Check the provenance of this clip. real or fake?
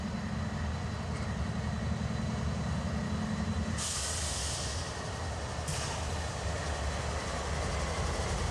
real